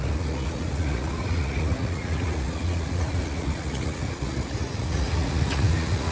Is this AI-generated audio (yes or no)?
yes